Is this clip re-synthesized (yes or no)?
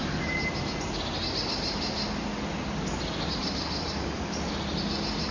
no